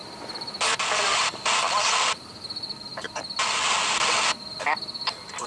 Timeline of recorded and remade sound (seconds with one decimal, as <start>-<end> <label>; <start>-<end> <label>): 0.0-5.5 recorded